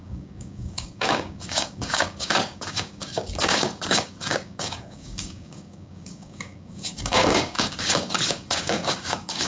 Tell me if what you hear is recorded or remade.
remade